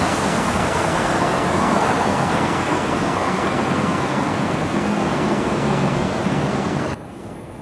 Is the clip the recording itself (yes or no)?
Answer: no